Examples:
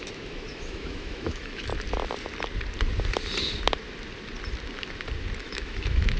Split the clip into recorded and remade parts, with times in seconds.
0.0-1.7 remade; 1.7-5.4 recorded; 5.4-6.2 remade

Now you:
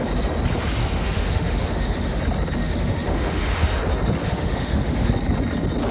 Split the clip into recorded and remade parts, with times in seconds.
0.0-0.8 recorded; 0.8-2.2 remade; 2.2-2.6 recorded; 2.6-3.8 remade; 3.8-4.2 recorded; 4.2-5.1 remade; 5.1-5.9 recorded